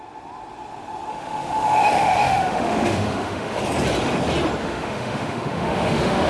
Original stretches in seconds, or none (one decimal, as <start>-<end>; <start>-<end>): 0.0-1.1; 3.6-4.6